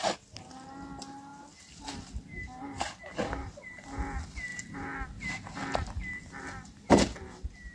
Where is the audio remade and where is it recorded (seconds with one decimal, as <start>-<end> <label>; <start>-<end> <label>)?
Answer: 0.0-7.7 recorded